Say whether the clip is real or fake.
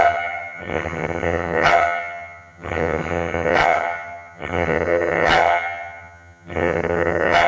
fake